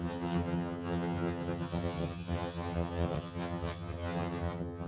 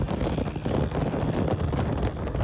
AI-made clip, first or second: first